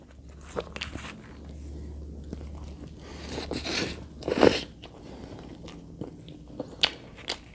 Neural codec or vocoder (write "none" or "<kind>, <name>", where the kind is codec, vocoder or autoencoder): none